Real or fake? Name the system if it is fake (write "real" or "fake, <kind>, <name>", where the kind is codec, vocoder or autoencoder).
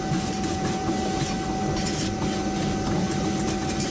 real